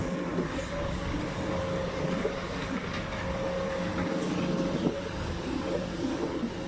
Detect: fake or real fake